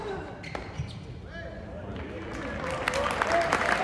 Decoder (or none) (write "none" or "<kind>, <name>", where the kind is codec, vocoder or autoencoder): none